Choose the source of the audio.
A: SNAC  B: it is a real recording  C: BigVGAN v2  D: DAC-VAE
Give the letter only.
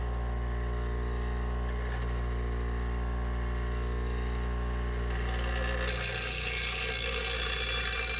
B